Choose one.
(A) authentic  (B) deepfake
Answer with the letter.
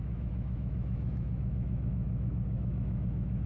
B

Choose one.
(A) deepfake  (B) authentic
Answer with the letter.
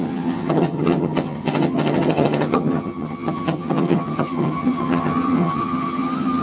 A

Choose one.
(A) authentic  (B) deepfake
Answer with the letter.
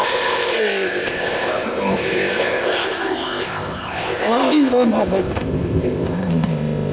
B